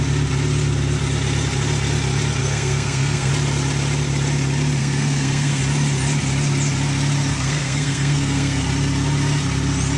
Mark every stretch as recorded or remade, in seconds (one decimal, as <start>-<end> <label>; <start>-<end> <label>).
0.0-2.4 recorded; 2.4-3.3 remade; 3.3-4.8 recorded; 4.8-5.6 remade; 5.6-7.3 recorded; 7.3-8.6 remade; 8.6-10.0 recorded